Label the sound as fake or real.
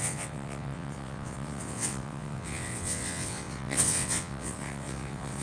fake